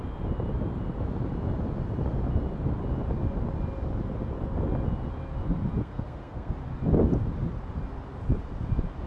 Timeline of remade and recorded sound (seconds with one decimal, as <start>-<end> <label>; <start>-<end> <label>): 0.0-5.8 recorded; 5.8-6.5 remade; 6.5-9.1 recorded